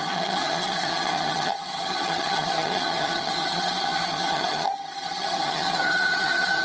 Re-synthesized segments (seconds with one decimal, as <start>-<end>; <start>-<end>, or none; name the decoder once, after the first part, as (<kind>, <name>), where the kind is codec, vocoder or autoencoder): 0.0-6.6 (vocoder, HiFi-GAN)